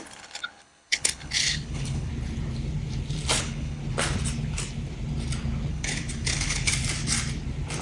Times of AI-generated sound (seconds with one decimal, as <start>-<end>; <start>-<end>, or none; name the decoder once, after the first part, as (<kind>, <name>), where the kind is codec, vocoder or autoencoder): 0.0-2.1 (codec, HILCodec); 3.4-3.8; 5.7-6.7